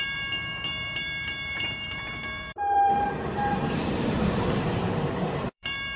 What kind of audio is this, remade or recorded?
remade